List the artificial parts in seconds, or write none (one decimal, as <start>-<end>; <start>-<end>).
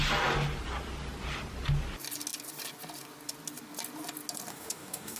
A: 4.5-5.2